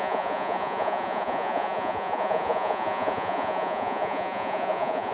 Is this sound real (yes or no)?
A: no